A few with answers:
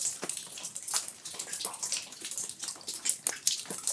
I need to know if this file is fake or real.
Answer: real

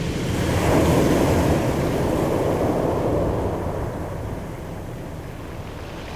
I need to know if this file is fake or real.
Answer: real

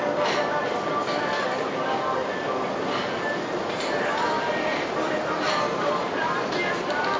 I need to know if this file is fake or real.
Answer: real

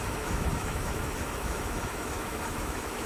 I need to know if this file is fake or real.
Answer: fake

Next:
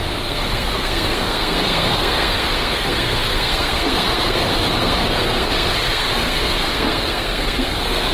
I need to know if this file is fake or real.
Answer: fake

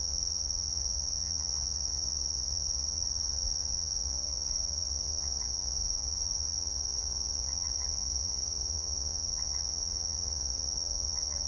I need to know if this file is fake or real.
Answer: fake